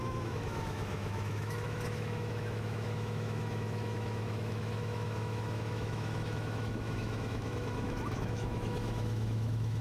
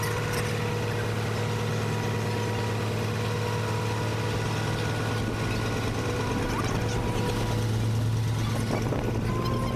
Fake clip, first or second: first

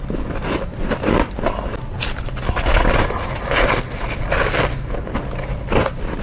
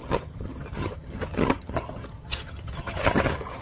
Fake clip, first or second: second